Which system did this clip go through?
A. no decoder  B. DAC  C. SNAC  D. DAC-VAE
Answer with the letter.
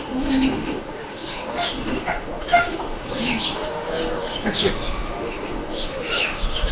D